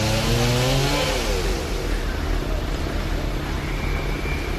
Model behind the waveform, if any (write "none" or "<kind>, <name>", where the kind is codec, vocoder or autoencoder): none